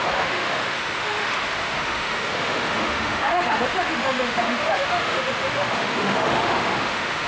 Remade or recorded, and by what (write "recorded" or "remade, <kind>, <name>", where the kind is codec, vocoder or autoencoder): remade, autoencoder, DAC-VAE